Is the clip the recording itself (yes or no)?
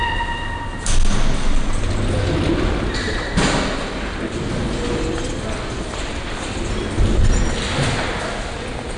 yes